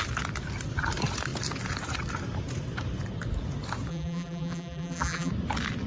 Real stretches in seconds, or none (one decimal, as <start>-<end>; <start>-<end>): 0.0-3.9; 5.3-5.9